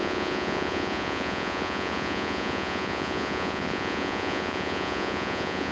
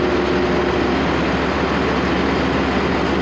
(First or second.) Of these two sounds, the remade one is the first